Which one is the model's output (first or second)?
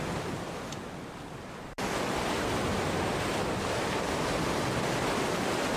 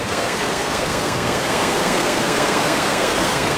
second